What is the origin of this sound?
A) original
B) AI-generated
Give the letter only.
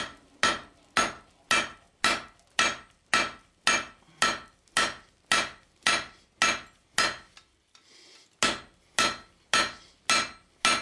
A